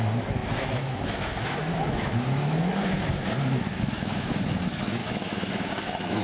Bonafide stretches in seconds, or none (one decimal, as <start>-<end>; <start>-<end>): none